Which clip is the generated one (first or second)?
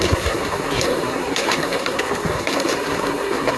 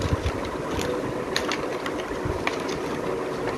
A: first